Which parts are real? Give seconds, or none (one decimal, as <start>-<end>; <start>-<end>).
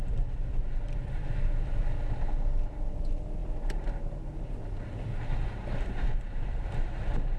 0.0-7.4